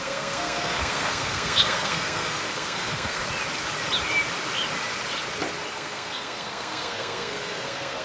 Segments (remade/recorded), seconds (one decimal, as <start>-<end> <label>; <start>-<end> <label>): 0.0-3.2 remade; 3.2-5.7 recorded; 5.7-8.0 remade

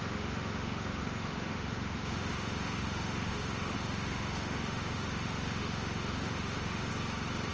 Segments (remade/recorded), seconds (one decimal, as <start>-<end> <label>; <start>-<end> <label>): 0.0-6.9 remade; 6.9-7.5 recorded

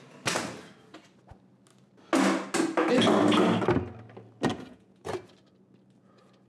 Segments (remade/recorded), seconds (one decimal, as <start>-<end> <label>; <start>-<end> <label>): 0.0-4.5 recorded; 4.5-5.1 remade; 5.1-6.5 recorded